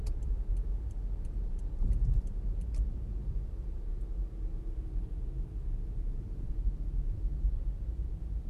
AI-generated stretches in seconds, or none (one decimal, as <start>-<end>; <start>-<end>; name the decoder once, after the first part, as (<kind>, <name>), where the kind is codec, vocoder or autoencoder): 0.0-3.9 (vocoder, BigVGAN v2); 6.2-8.5